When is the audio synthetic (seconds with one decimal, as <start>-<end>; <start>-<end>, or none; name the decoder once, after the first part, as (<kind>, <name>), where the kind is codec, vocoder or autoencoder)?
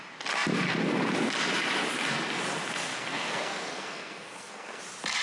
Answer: 2.9-4.8 (codec, SNAC)